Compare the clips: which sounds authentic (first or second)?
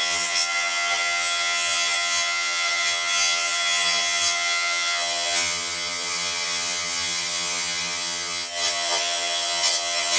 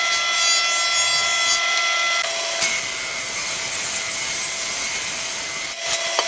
second